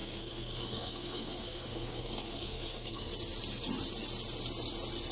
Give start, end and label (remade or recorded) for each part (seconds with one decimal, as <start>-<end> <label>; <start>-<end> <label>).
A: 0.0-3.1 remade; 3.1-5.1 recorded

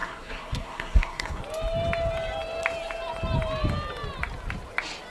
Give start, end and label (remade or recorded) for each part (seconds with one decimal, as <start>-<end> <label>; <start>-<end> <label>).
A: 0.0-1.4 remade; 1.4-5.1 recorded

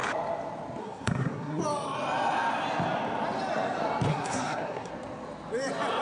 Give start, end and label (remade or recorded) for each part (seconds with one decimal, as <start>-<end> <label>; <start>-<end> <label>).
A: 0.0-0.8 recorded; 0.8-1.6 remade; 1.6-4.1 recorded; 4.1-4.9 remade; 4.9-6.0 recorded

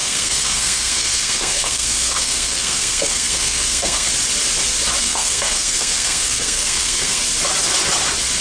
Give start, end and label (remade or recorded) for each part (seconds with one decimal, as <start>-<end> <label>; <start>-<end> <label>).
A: 0.0-4.1 remade; 4.1-5.0 recorded; 5.0-7.2 remade; 7.2-8.4 recorded

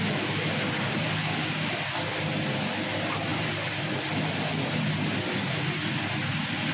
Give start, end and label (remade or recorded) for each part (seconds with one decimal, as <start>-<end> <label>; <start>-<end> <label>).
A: 0.0-6.7 recorded